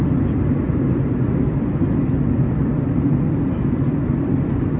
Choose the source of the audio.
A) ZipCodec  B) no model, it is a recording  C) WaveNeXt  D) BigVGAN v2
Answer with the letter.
B